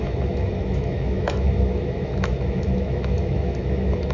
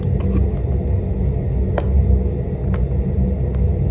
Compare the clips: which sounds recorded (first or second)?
second